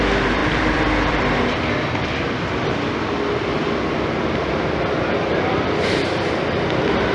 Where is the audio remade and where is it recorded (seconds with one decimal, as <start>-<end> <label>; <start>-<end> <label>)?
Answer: 0.0-7.1 remade

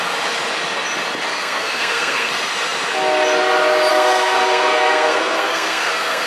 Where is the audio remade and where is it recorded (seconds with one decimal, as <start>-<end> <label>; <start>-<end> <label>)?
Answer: 0.0-1.3 recorded; 1.3-2.3 remade; 2.3-3.9 recorded; 3.9-6.3 remade

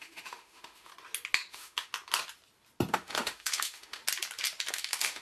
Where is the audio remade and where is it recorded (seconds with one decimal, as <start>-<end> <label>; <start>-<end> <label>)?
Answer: 0.0-0.9 remade; 0.9-1.5 recorded; 1.5-1.9 remade; 1.9-2.9 recorded; 2.9-4.0 remade; 4.0-4.7 recorded; 4.7-5.2 remade

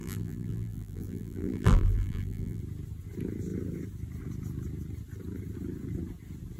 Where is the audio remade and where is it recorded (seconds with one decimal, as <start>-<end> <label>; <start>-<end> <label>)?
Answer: 0.0-2.6 remade; 2.6-6.6 recorded

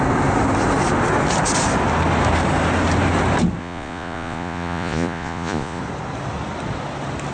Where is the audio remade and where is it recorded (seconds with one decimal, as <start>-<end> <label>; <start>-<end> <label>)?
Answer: 0.0-3.6 recorded; 3.6-5.8 remade; 5.8-7.3 recorded